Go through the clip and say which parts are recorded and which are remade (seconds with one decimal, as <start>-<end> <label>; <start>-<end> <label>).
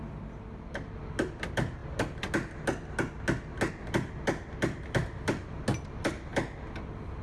0.0-7.2 recorded